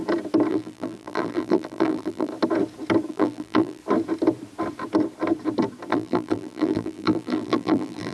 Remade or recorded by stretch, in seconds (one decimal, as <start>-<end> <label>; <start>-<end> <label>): 0.0-0.5 recorded; 0.5-2.3 remade; 2.3-3.1 recorded; 3.1-3.8 remade; 3.8-5.9 recorded; 5.9-8.1 remade